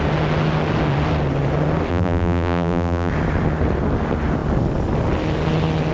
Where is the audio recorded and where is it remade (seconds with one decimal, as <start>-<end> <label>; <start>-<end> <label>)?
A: 0.0-1.9 recorded; 1.9-3.1 remade; 3.1-5.9 recorded